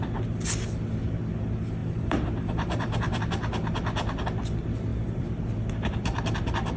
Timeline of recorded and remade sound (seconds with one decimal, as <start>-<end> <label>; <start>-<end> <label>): 0.0-1.8 recorded; 1.8-3.2 remade; 3.2-4.9 recorded; 4.9-5.4 remade; 5.4-6.8 recorded